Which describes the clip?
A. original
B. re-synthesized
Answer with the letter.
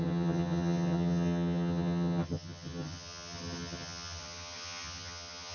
B